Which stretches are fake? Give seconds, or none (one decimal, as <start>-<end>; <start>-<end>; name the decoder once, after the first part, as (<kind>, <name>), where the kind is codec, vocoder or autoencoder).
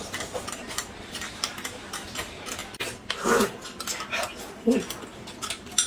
0.0-2.6 (vocoder, BigVGAN v2); 5.0-5.9